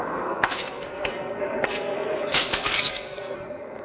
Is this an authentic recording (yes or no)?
no